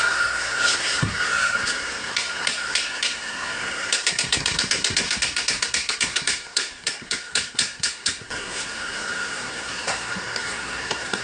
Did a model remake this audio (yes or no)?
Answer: yes